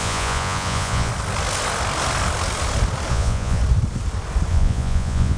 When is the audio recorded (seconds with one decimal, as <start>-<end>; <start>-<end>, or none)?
1.1-3.1; 3.6-4.5